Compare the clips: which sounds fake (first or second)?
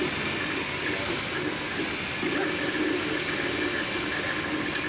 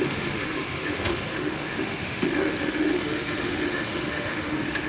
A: second